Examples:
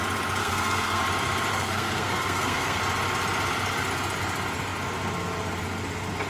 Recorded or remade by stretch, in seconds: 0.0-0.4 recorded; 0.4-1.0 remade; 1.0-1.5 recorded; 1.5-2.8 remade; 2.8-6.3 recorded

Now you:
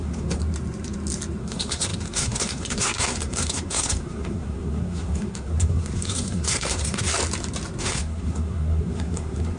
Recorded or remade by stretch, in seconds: 0.0-0.4 remade; 0.4-1.4 recorded; 1.4-7.1 remade; 7.1-7.8 recorded; 7.8-9.6 remade

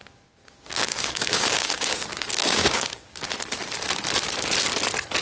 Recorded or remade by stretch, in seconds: 0.0-3.3 remade; 3.3-5.2 recorded

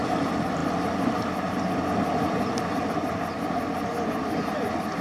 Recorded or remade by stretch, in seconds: 0.0-5.0 recorded

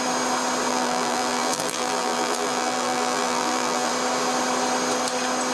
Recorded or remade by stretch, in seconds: 0.0-0.7 recorded; 0.7-3.9 remade; 3.9-5.5 recorded